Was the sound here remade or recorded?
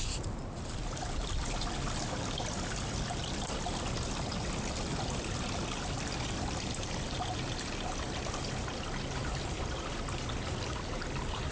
recorded